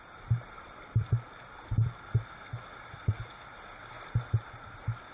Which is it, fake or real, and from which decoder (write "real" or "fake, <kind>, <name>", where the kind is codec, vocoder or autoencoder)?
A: real